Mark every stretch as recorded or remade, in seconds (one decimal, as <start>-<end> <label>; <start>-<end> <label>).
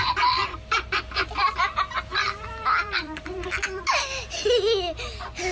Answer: 0.0-0.4 recorded; 0.4-1.0 remade; 1.0-2.1 recorded; 2.1-3.8 remade; 3.8-5.5 recorded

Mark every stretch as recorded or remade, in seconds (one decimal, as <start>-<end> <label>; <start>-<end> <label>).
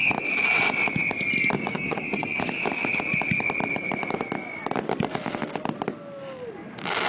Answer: 0.0-1.7 recorded; 1.7-2.4 remade; 2.4-7.1 recorded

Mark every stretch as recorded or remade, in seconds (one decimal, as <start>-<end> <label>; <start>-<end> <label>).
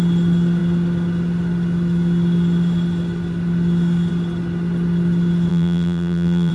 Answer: 0.0-5.5 recorded; 5.5-6.5 remade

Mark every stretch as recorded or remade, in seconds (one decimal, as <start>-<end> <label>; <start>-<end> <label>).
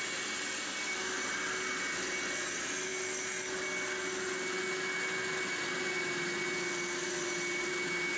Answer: 0.0-8.2 recorded